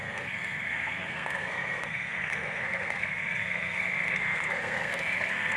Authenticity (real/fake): fake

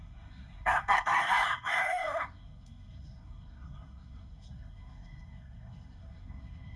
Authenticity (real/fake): fake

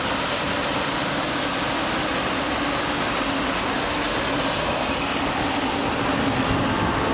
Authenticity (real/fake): real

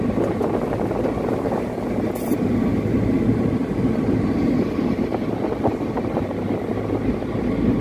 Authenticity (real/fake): real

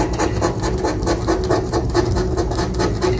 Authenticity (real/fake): real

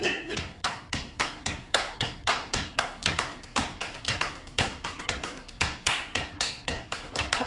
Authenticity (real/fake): fake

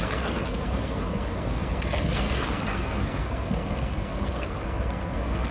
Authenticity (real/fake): fake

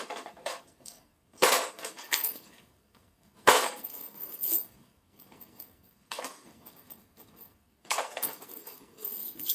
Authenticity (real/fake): fake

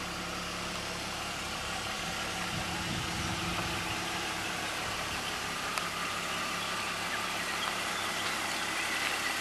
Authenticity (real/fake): real